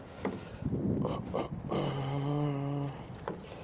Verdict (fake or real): real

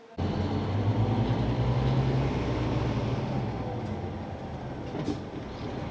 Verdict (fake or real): real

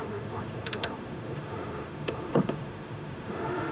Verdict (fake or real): fake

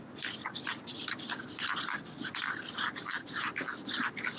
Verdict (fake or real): real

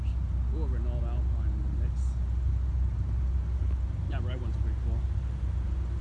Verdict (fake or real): real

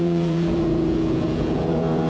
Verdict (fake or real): fake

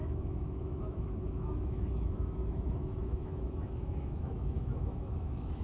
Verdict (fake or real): fake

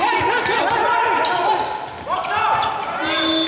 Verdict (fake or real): real